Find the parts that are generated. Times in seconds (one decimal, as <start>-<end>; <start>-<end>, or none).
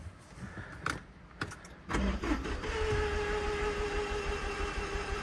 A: none